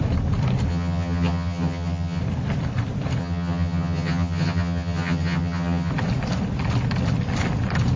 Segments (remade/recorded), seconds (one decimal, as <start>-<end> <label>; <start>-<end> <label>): 0.0-0.7 recorded; 0.7-2.2 remade; 2.2-3.2 recorded; 3.2-5.9 remade; 5.9-8.0 recorded